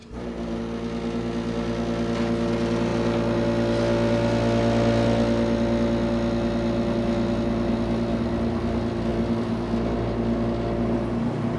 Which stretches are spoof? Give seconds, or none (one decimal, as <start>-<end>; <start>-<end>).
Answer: 0.0-0.6